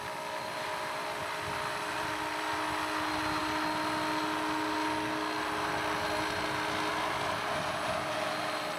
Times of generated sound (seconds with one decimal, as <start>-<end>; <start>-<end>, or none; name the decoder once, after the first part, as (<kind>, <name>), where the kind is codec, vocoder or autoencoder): 1.2-2.5 (vocoder, BigVGAN v2)